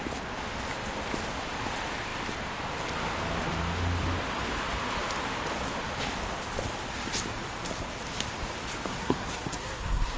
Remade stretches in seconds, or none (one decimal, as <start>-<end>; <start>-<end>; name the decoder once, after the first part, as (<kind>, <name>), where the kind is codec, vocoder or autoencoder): 8.9-10.2 (codec, SNAC)